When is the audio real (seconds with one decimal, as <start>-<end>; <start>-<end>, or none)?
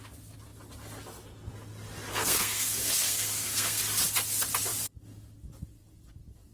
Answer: 0.0-2.1; 3.8-6.5